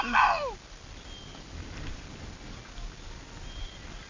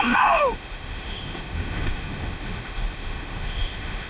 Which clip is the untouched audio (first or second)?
first